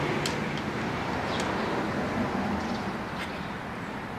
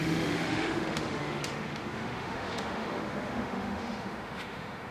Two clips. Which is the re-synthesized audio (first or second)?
second